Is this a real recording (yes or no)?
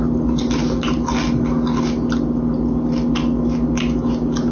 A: yes